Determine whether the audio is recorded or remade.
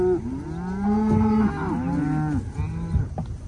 recorded